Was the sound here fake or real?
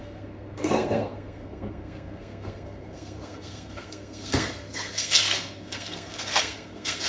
fake